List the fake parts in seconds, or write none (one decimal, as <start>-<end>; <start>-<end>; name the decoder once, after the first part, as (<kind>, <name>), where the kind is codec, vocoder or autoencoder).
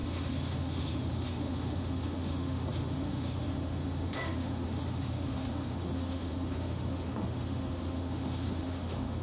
0.0-9.2 (autoencoder, DAC-VAE)